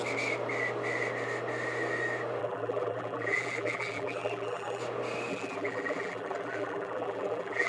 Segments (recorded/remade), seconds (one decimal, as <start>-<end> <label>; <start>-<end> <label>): 0.0-2.4 recorded; 2.4-4.8 remade; 4.8-5.3 recorded; 5.3-7.7 remade